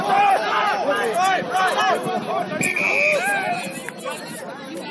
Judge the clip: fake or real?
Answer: real